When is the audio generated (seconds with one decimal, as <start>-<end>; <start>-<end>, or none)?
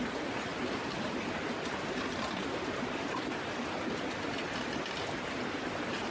none